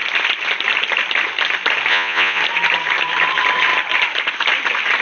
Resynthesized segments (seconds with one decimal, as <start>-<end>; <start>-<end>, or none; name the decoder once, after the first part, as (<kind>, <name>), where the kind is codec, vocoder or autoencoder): 1.9-2.4 (vocoder, Vocos)